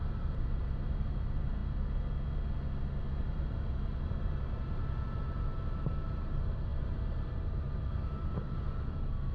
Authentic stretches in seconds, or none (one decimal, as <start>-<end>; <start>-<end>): 1.6-3.2